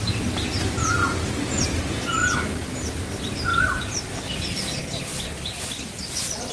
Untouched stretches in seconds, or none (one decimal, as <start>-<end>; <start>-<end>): 0.0-6.5